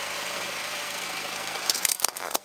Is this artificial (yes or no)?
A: yes